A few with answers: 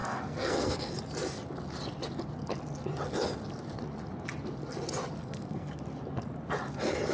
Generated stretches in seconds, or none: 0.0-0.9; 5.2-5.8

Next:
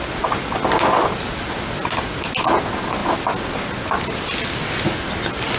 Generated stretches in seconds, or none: none

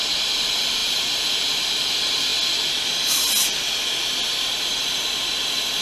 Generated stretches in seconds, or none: 0.8-1.7

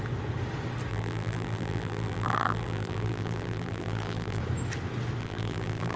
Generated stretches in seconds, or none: 0.9-4.4; 5.2-6.0

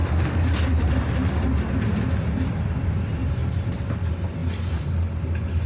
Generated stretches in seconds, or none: none

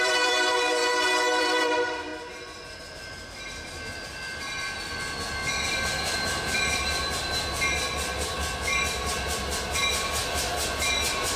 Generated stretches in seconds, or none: 0.0-0.8; 1.4-2.1; 2.8-11.4

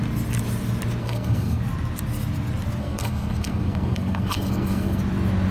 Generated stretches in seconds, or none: 1.0-1.6; 2.8-5.0